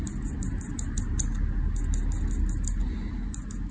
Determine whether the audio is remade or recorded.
recorded